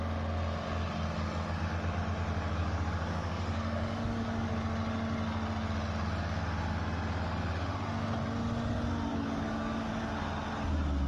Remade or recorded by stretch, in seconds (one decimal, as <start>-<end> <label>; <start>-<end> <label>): 0.0-2.6 recorded; 2.6-4.5 remade; 4.5-9.1 recorded; 9.1-9.9 remade; 9.9-11.1 recorded

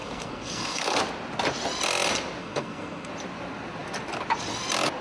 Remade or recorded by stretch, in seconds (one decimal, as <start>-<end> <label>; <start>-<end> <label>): 0.0-1.0 remade; 1.0-2.4 recorded; 2.4-3.1 remade; 3.1-5.0 recorded

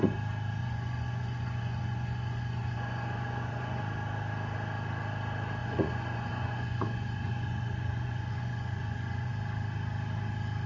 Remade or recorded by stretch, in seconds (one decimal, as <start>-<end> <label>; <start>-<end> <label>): 0.0-0.6 recorded; 0.6-3.8 remade; 3.8-5.6 recorded; 5.6-9.3 remade; 9.3-10.7 recorded

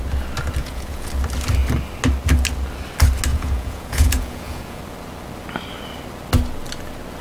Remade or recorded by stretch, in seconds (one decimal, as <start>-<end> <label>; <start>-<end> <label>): 0.0-0.6 recorded; 0.6-1.1 remade; 1.1-3.3 recorded; 3.3-4.8 remade; 4.8-7.2 recorded

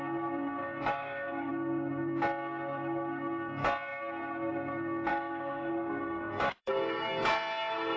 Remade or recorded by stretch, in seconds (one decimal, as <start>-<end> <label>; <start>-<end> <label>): 0.0-0.6 recorded; 0.6-1.5 remade; 1.5-5.1 recorded; 5.1-6.7 remade; 6.7-8.0 recorded

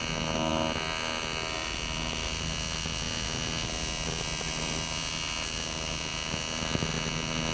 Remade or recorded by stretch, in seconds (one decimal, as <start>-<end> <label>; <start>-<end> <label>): 0.0-7.5 recorded

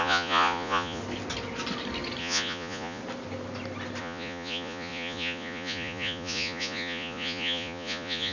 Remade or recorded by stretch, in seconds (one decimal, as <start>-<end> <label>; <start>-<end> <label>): 0.0-1.0 remade; 1.0-2.2 recorded; 2.2-3.0 remade; 3.0-4.0 recorded; 4.0-8.3 remade